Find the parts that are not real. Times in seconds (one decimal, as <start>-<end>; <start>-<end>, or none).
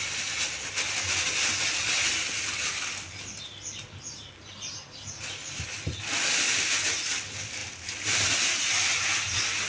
none